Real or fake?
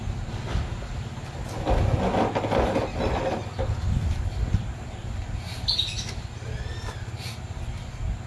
real